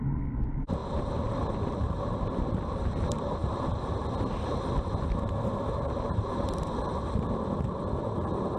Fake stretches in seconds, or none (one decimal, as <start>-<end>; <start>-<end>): none